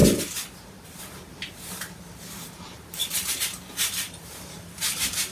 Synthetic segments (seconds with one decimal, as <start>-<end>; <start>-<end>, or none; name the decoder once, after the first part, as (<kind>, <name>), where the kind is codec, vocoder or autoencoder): 1.0-5.3 (vocoder, BigVGAN v2)